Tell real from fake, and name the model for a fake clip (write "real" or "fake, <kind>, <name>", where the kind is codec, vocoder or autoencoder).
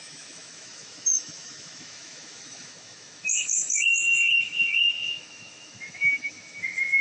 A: fake, autoencoder, DAC-VAE